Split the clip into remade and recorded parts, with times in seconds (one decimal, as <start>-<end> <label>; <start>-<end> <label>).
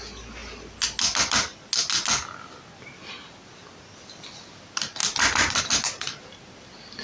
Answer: 0.0-7.0 recorded